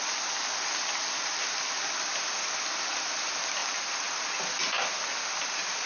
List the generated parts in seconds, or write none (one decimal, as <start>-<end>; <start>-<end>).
none